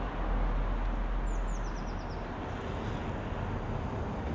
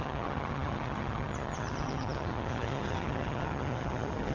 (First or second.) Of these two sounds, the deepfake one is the second